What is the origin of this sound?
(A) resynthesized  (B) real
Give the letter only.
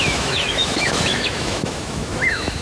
A